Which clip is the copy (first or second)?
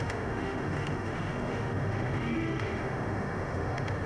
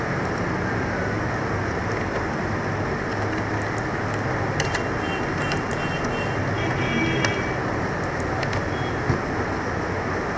first